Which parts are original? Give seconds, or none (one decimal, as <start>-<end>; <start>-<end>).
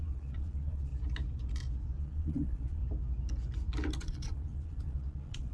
0.9-2.0; 2.8-4.0